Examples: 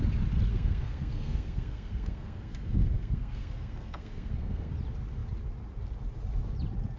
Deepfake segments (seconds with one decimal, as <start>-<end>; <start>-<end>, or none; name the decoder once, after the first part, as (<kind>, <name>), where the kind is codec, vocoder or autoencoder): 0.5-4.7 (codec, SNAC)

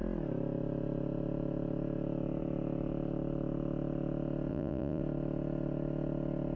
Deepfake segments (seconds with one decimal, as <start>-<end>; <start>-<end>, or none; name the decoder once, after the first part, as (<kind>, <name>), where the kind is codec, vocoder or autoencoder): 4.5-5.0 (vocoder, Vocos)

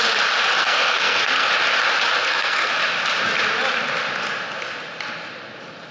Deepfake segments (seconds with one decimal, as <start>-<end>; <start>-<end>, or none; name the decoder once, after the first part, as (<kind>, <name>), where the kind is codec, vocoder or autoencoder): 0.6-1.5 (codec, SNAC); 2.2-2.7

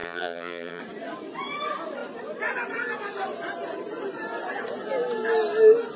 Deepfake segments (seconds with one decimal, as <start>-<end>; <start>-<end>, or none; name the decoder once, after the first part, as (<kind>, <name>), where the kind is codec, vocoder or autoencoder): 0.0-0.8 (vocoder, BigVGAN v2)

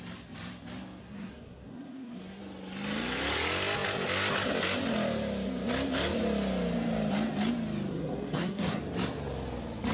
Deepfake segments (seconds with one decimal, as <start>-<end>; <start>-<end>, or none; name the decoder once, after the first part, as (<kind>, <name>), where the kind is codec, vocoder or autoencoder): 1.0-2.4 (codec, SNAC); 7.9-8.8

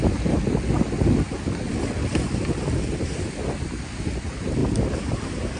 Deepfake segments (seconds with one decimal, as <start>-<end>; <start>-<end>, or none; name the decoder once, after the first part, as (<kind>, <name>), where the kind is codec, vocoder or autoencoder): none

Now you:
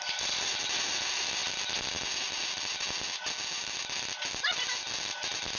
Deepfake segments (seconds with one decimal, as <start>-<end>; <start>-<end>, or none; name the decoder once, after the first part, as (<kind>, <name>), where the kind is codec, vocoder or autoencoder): none

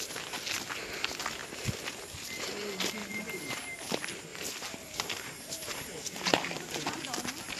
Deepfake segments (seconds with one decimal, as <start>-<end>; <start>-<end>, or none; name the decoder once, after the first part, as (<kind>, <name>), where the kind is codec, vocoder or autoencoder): 3.0-3.8 (vocoder, BigVGAN v2); 4.3-7.0